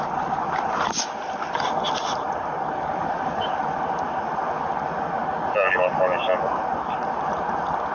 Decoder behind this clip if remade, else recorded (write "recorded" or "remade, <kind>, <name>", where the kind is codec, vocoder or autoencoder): recorded